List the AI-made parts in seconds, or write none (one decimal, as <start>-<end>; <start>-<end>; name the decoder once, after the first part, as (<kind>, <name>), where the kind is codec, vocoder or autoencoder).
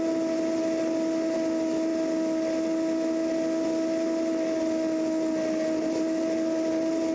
none